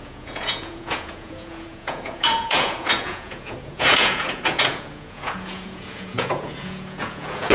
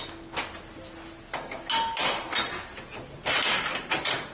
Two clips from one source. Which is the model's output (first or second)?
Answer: first